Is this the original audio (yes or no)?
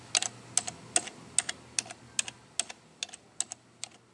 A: yes